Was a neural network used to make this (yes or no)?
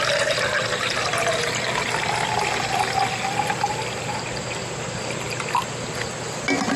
no